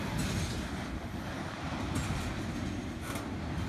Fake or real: real